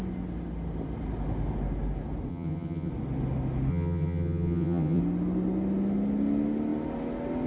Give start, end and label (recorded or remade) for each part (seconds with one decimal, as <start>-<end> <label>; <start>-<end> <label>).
0.0-2.3 recorded; 2.3-2.9 remade; 2.9-3.7 recorded; 3.7-5.0 remade; 5.0-7.5 recorded